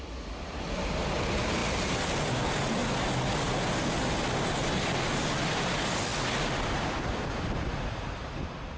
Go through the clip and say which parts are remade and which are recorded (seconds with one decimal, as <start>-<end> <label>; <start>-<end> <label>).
0.0-8.8 recorded